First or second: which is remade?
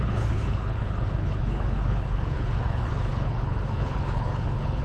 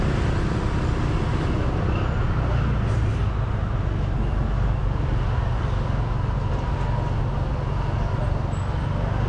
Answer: first